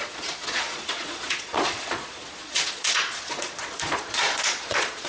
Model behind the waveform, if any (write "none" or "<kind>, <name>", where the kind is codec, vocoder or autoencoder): vocoder, Vocos